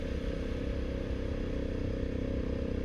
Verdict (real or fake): real